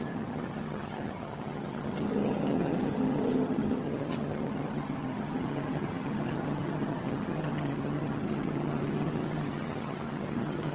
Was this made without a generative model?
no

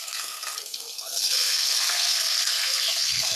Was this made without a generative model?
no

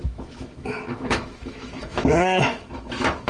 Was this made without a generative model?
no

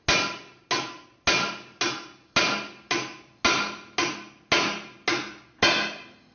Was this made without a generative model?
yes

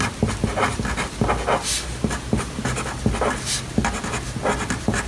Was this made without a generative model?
yes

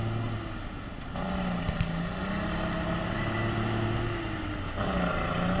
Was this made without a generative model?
yes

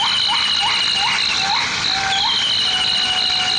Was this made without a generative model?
yes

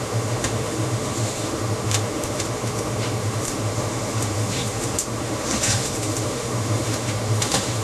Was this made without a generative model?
no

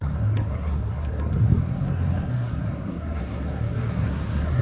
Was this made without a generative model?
no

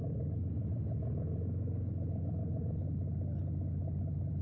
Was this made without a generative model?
yes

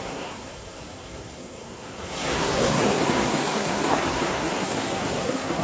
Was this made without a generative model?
no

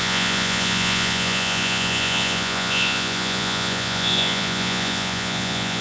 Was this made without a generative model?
no